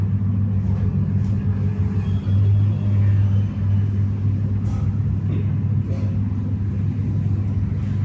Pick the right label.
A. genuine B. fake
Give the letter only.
A